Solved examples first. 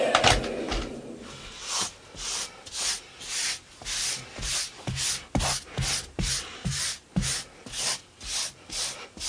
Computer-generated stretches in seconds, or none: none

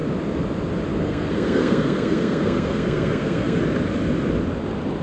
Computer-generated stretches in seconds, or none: 1.0-3.6 (codec, SNAC)

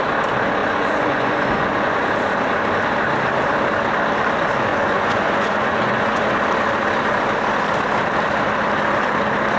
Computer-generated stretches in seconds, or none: 0.6-2.1 (vocoder, Vocos); 4.7-6.2